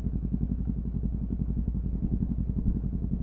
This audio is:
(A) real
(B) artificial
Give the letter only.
B